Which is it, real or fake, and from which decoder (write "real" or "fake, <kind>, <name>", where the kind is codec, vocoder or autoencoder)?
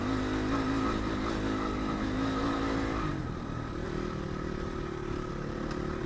real